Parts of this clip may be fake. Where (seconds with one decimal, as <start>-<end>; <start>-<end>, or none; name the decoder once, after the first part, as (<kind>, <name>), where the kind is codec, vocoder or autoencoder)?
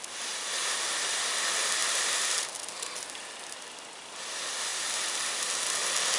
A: none